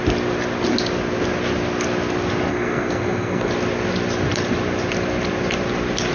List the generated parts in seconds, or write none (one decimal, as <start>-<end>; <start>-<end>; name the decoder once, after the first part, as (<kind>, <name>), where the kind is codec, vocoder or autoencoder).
2.5-3.5 (codec, SNAC)